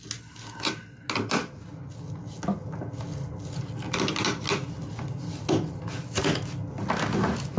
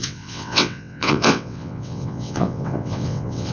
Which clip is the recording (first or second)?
first